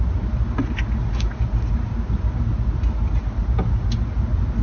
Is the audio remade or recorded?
recorded